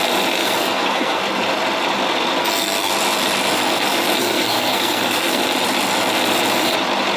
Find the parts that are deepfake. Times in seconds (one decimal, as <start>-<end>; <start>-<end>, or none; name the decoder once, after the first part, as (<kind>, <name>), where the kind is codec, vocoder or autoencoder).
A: 0.4-1.2 (codec, SNAC); 2.4-2.9; 4.2-5.4